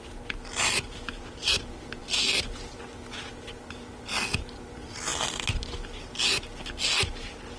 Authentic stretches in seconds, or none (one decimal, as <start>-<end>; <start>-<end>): 0.0-7.6